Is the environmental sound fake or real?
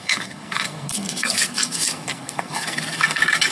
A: fake